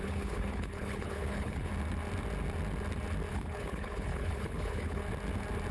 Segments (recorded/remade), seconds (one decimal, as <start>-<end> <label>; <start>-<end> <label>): 0.0-1.7 remade; 1.7-3.3 recorded; 3.3-5.0 remade; 5.0-5.7 recorded